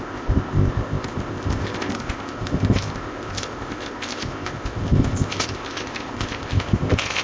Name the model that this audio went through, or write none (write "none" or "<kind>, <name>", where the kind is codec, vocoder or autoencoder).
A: codec, ZipCodec